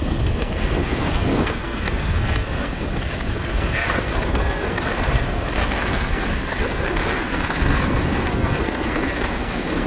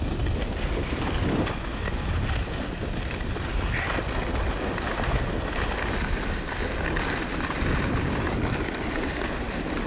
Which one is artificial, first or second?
first